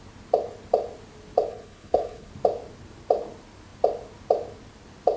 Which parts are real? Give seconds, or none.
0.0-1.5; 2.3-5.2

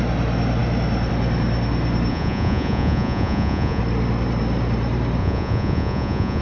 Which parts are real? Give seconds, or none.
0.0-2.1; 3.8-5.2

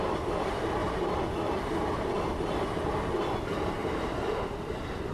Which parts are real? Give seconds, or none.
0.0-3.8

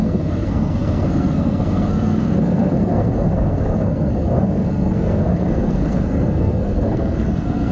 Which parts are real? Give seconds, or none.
none